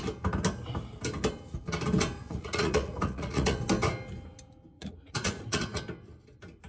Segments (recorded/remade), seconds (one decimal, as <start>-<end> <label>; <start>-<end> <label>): 0.0-2.2 recorded; 2.2-3.6 remade; 3.6-4.7 recorded; 4.7-5.8 remade; 5.8-6.7 recorded